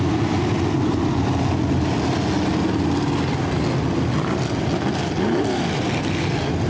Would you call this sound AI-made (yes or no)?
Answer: no